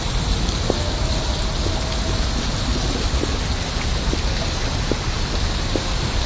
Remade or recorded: recorded